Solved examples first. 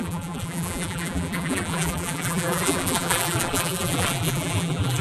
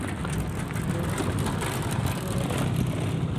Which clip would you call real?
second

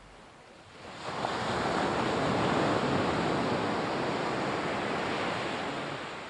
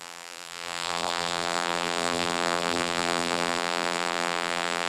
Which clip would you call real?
first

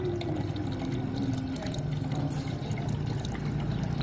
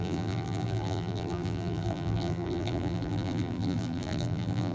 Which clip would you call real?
first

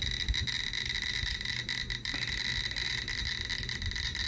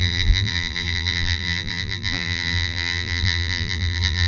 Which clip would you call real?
first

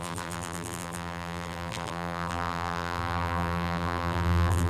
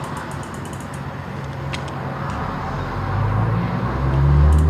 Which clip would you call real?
second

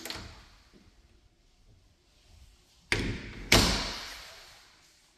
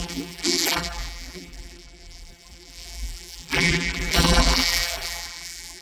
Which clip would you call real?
first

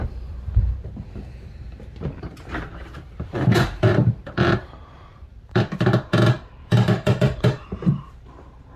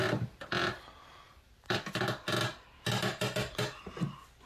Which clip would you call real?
second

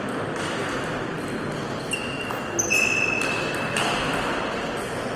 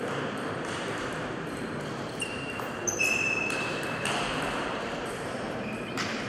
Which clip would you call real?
first